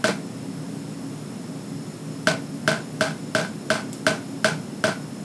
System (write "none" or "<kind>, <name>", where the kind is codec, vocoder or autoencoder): none